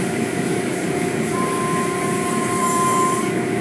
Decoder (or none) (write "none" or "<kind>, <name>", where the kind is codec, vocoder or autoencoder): codec, DAC